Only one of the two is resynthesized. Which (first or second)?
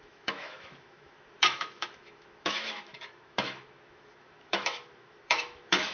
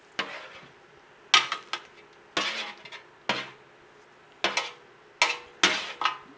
first